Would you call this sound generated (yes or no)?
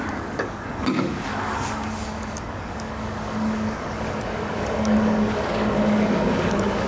yes